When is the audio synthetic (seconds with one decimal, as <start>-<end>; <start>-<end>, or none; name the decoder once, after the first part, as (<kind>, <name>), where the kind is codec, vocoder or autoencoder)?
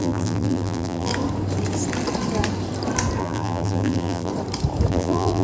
0.0-1.1 (vocoder, BigVGAN v2); 3.2-4.3; 4.9-5.4